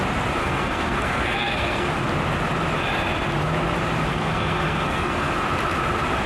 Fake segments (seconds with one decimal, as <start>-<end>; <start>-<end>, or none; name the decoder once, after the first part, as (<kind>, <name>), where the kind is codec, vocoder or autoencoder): 0.4-1.9 (codec, SNAC); 4.1-5.3